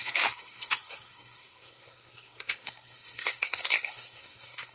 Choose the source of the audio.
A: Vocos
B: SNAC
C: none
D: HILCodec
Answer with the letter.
B